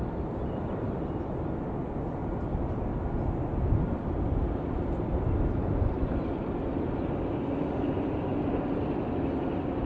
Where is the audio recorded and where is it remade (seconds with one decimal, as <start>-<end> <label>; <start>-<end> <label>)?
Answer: 0.0-2.2 recorded; 2.2-2.8 remade; 2.8-9.9 recorded

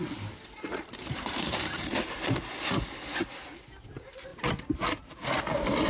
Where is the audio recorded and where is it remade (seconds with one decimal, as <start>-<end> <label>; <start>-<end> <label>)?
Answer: 0.0-0.7 recorded; 0.7-2.4 remade; 2.4-5.9 recorded

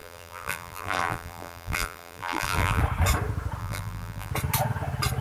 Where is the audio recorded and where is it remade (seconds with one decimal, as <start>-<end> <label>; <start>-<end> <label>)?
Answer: 0.0-2.8 remade; 2.8-3.6 recorded; 3.6-4.3 remade; 4.3-5.2 recorded

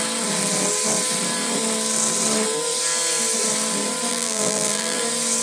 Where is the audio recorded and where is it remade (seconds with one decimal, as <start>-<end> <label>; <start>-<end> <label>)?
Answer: 0.0-4.1 recorded; 4.1-5.0 remade; 5.0-5.4 recorded

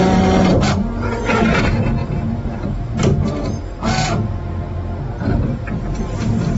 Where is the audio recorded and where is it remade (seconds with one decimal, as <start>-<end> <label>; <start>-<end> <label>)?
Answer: 0.0-5.3 recorded; 5.3-6.6 remade

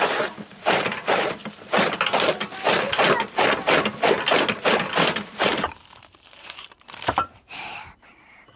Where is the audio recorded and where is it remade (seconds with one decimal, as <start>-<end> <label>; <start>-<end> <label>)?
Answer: 0.0-1.4 remade; 1.4-5.1 recorded; 5.1-8.6 remade

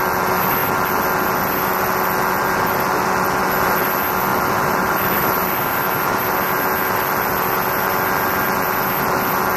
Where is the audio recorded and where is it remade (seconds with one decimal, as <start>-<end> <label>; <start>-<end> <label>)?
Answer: 0.0-4.3 recorded; 4.3-5.8 remade; 5.8-9.6 recorded